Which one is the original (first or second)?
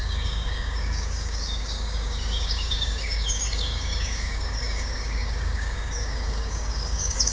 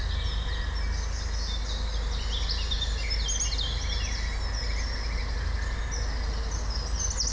second